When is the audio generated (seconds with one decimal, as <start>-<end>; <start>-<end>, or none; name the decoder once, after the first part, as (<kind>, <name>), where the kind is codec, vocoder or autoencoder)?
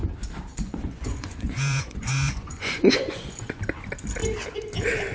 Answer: 0.5-3.6 (vocoder, Vocos)